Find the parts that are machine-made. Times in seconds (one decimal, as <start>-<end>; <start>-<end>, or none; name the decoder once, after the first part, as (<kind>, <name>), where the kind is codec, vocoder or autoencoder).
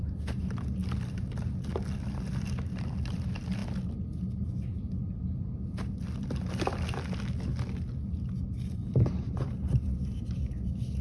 8.8-9.7 (vocoder, BigVGAN v2)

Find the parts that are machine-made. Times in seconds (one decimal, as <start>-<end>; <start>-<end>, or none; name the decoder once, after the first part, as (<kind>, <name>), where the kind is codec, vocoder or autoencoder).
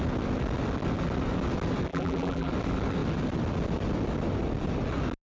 1.9-2.5 (vocoder, BigVGAN v2)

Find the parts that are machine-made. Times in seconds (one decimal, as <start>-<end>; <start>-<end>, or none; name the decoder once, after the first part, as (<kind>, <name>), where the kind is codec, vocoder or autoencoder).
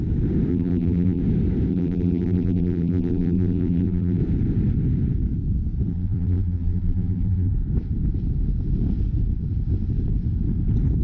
0.5-1.2 (vocoder, BigVGAN v2); 1.7-4.2; 5.9-7.5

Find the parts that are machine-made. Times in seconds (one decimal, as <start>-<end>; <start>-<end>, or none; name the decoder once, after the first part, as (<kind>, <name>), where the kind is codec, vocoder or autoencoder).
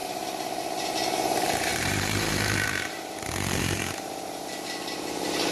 0.0-5.5 (vocoder, BigVGAN v2)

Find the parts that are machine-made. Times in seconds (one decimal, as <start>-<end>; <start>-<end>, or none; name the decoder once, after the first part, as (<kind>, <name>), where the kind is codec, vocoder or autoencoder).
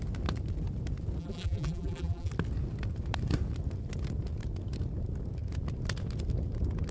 1.2-2.3 (vocoder, BigVGAN v2)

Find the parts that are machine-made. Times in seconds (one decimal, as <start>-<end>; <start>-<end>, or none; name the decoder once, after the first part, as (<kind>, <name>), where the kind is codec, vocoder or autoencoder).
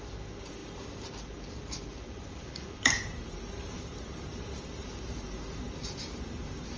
0.0-0.6 (vocoder, BigVGAN v2); 1.2-6.8